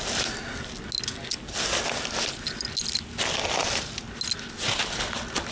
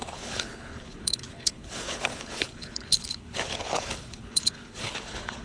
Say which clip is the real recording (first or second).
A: first